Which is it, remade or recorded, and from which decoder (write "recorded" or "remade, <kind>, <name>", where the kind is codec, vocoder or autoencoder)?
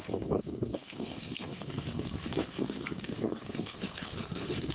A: remade, codec, SNAC